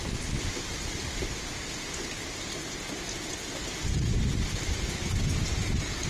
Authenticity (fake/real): real